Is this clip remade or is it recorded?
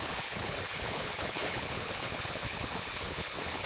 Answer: remade